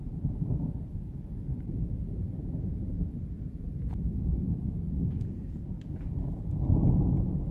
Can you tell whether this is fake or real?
real